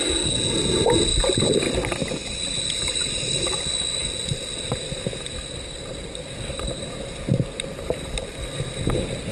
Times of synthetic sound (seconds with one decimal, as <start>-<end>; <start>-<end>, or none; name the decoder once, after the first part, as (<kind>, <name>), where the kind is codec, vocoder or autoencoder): none